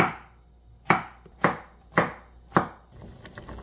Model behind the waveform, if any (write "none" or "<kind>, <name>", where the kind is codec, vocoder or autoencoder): none